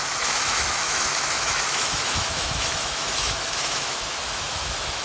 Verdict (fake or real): fake